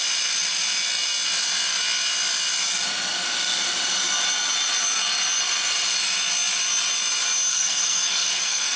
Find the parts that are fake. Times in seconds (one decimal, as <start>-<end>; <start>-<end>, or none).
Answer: 7.5-8.8

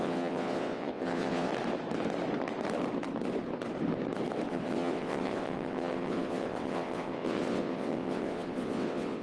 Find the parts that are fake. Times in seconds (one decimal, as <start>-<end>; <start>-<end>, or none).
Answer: 0.0-1.5; 4.5-9.2